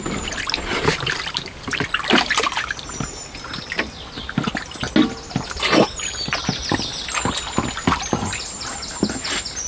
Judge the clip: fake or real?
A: real